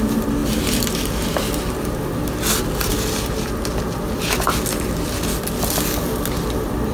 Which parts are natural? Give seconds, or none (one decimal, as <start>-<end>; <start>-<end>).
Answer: 0.0-6.9